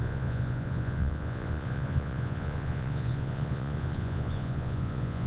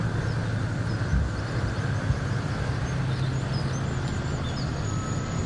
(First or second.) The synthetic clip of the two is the first